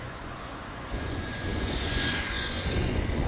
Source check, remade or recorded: remade